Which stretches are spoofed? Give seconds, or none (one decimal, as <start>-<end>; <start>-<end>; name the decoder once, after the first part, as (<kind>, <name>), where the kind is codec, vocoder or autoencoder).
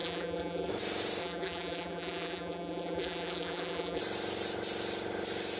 0.0-0.7 (vocoder, BigVGAN v2); 1.2-4.0